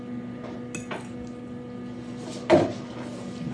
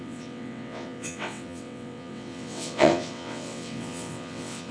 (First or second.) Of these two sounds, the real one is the first